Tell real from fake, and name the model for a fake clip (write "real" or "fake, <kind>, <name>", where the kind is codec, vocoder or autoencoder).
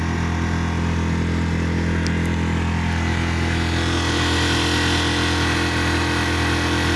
real